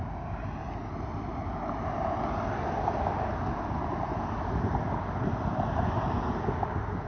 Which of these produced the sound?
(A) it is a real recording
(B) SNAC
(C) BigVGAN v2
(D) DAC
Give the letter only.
C